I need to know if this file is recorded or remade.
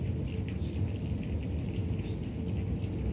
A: recorded